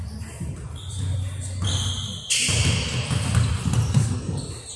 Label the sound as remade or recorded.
recorded